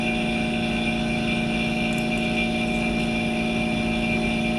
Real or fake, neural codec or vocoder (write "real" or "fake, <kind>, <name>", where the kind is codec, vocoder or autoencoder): real